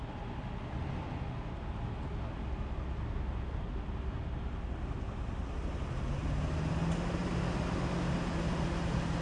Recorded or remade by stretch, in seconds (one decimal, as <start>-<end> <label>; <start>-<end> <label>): 0.0-9.2 recorded

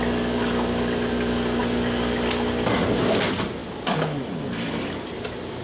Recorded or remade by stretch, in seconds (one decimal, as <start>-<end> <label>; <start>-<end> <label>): 0.0-5.6 recorded